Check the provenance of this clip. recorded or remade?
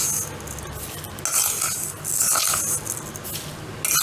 recorded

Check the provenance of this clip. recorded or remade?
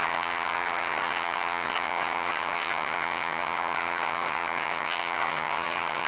remade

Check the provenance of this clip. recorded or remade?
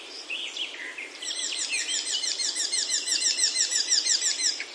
remade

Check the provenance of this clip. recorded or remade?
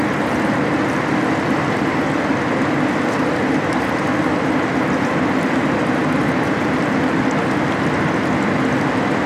recorded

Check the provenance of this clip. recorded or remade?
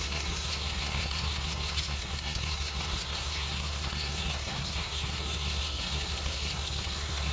remade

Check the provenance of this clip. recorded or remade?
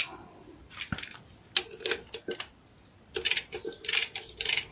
recorded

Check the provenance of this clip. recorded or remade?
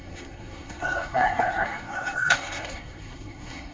remade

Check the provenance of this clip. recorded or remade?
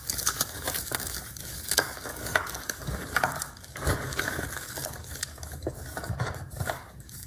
remade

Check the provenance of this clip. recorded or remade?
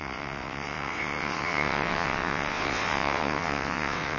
remade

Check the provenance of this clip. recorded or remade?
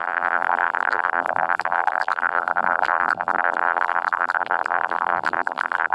remade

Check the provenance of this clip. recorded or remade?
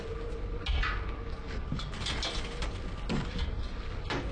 recorded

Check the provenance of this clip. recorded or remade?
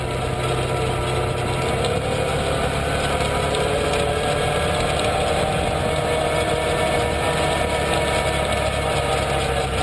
recorded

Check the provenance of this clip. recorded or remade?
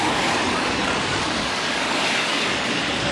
remade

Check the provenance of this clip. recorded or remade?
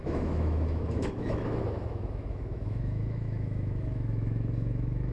remade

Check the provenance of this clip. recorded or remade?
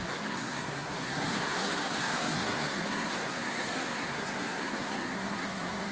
remade